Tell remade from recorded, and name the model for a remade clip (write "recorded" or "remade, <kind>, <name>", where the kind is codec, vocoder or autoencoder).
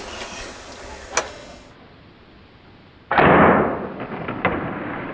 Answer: recorded